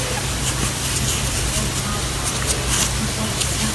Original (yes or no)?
yes